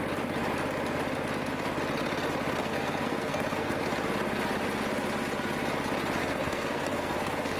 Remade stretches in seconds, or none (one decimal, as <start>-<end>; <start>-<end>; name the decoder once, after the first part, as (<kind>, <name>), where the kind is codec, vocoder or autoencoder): 2.6-3.8 (codec, SNAC); 6.2-7.6